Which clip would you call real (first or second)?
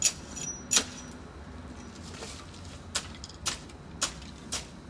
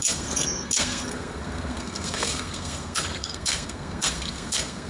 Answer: first